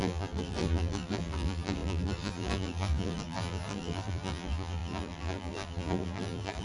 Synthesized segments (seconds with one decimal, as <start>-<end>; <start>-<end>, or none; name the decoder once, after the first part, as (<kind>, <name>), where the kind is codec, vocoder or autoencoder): 0.0-6.6 (vocoder, BigVGAN v2)